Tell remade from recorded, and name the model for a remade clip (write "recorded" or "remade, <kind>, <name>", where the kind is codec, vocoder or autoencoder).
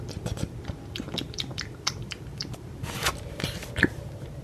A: remade, vocoder, BigVGAN v2